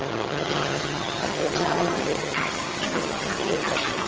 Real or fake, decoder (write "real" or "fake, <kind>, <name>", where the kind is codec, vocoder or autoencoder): fake, vocoder, HiFi-GAN